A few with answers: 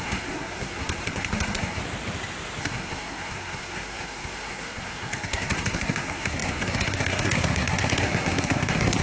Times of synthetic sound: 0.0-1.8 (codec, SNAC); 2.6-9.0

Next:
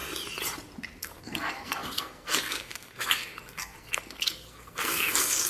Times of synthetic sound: 1.0-5.5 (codec, SNAC)

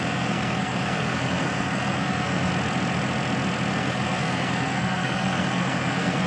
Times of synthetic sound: 0.0-2.5 (codec, SNAC); 3.7-6.3

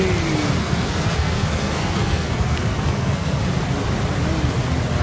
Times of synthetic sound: 0.6-3.4 (codec, SNAC)